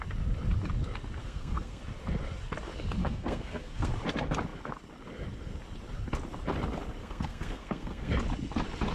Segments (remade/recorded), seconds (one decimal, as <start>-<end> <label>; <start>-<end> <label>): 0.0-1.2 recorded; 1.2-1.8 remade; 1.8-3.0 recorded; 3.0-3.9 remade; 3.9-7.0 recorded; 7.0-8.1 remade; 8.1-8.9 recorded